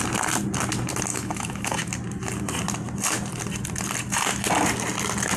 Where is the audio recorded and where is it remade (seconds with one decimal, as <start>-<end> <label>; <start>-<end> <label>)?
0.0-1.1 recorded; 1.1-1.9 remade; 1.9-5.4 recorded